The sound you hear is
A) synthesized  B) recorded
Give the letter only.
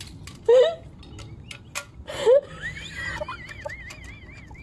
B